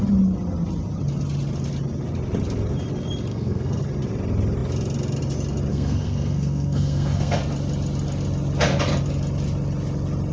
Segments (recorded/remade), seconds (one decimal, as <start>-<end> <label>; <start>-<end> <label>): 0.0-3.3 recorded; 3.3-3.8 remade; 3.8-5.7 recorded; 5.7-7.4 remade; 7.4-10.3 recorded